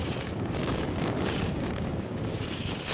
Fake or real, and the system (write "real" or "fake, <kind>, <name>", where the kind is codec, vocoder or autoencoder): fake, codec, DAC